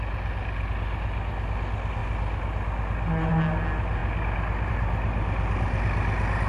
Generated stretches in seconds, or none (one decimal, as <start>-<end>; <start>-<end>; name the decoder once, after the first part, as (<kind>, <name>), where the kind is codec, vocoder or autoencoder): none